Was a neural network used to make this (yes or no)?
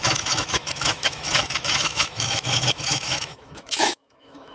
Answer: yes